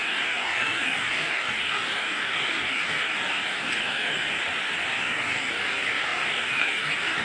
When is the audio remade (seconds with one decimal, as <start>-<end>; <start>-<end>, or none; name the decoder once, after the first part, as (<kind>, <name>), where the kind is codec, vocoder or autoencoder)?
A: 0.0-4.4 (codec, DAC); 4.9-7.2